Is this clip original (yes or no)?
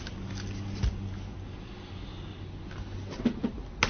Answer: yes